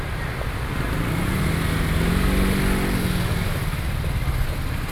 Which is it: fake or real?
real